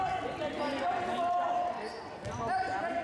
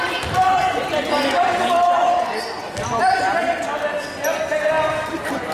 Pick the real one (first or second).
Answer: first